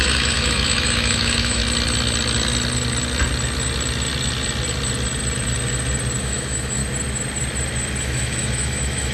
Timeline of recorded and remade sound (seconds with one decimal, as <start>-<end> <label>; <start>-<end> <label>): 0.0-1.6 remade; 1.6-6.2 recorded; 6.2-6.8 remade; 6.8-8.0 recorded; 8.0-9.1 remade